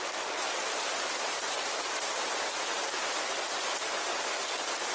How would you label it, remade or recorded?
recorded